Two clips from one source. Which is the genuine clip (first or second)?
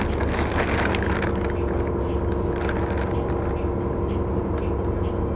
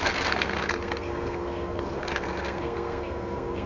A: first